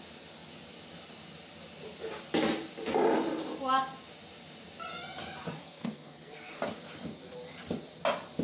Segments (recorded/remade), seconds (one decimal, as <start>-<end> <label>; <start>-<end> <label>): 0.0-5.6 recorded; 5.6-6.6 remade; 6.6-8.4 recorded